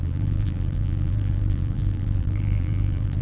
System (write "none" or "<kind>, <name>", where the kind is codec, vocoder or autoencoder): vocoder, BigVGAN v2